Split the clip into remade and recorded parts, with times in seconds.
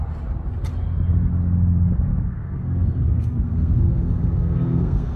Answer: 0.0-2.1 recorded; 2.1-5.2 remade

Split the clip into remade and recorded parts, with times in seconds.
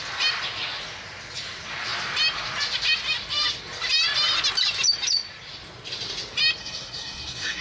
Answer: 0.0-6.6 recorded; 6.6-7.6 remade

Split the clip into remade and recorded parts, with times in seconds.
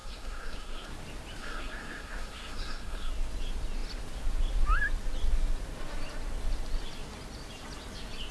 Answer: 0.0-0.9 remade; 0.9-1.4 recorded; 1.4-3.1 remade; 3.1-8.3 recorded